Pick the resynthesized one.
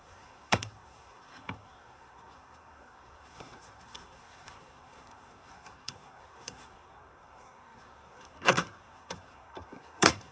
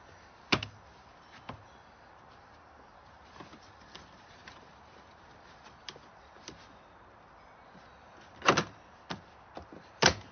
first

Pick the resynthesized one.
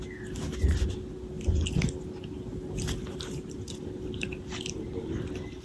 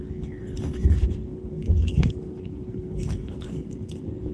second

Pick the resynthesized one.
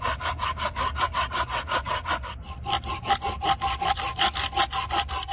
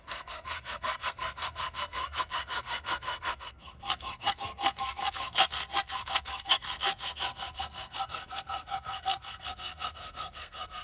second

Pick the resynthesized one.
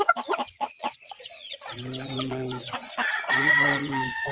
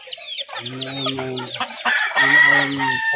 first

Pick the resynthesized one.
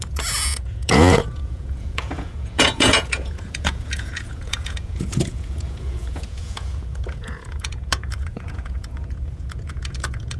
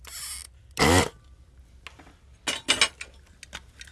first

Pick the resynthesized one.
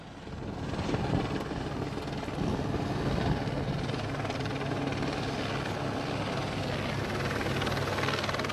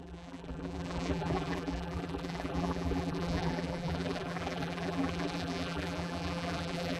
second